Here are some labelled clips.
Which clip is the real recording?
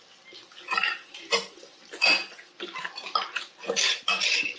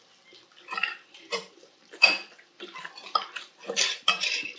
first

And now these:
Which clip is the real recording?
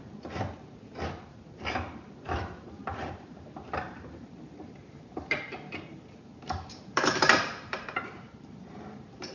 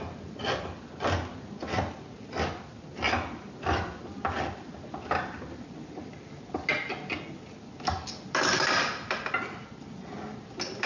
second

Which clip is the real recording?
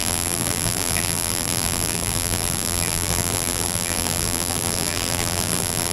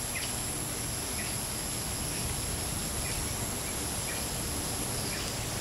second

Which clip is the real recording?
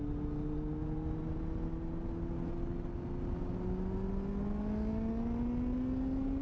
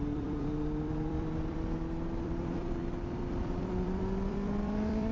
first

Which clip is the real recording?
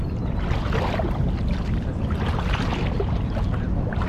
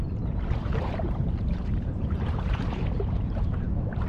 first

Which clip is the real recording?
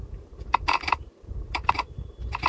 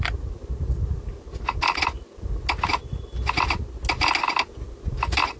second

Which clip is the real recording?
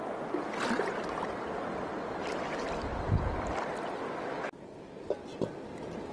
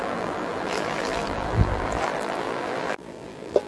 first